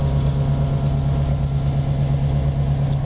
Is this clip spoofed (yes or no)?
no